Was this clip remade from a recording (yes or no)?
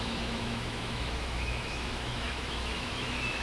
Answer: yes